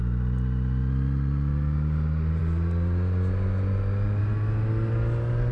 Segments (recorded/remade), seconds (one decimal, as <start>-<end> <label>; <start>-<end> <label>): 0.0-5.5 recorded